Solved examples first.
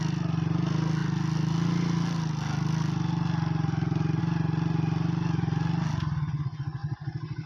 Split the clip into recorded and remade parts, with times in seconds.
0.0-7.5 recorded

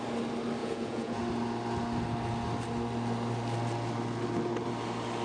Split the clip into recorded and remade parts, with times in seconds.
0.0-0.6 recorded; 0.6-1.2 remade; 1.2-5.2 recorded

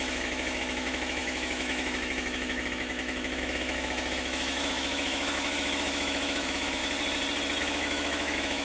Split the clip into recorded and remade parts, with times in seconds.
0.0-6.8 remade; 6.8-7.6 recorded; 7.6-8.6 remade

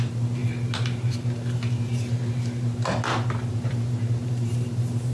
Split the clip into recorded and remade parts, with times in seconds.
0.0-0.4 remade; 0.4-3.5 recorded; 3.5-5.1 remade

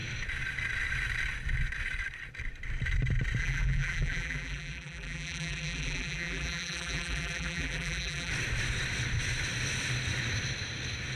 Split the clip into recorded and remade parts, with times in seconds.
0.0-3.4 recorded; 3.4-8.3 remade; 8.3-11.2 recorded

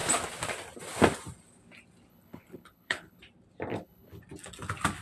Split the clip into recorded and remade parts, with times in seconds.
0.0-2.1 recorded; 2.1-3.2 remade; 3.2-3.7 recorded; 3.7-4.2 remade; 4.2-5.0 recorded